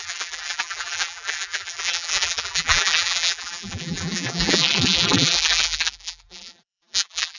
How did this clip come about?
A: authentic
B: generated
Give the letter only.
B